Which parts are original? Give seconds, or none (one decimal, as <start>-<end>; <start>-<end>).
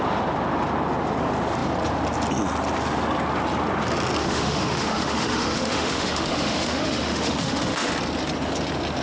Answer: 0.0-4.2; 7.9-9.0